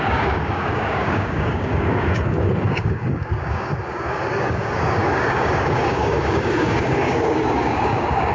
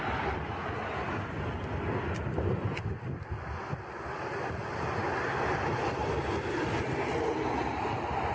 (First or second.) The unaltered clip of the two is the second